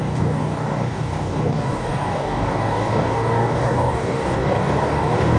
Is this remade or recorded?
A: remade